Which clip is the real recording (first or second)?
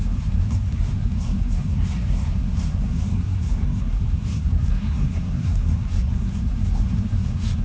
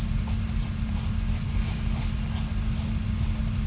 second